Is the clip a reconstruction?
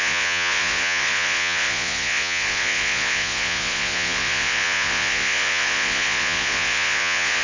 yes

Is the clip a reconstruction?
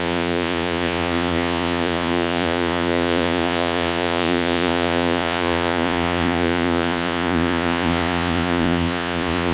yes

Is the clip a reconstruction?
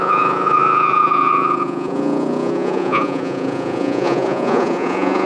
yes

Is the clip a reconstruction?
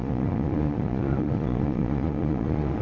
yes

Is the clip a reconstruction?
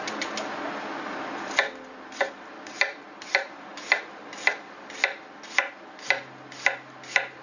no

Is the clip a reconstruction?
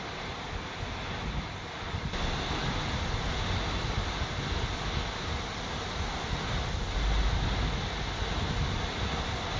no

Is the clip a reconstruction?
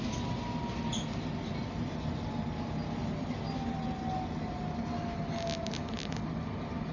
no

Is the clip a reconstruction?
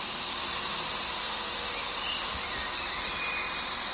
no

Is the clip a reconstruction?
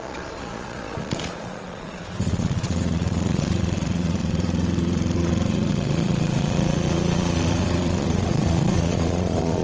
yes